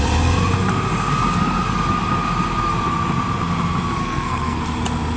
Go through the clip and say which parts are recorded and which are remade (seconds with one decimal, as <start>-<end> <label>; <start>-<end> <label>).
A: 0.0-4.0 recorded; 4.0-4.6 remade; 4.6-5.2 recorded